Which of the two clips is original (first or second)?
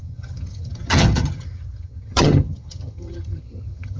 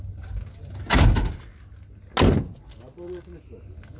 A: second